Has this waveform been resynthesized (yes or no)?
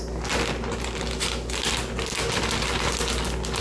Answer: no